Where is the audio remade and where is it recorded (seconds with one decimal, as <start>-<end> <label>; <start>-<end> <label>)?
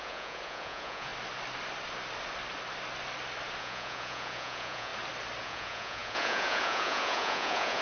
0.0-1.1 remade; 1.1-3.6 recorded; 3.6-4.9 remade; 4.9-5.4 recorded; 5.4-7.8 remade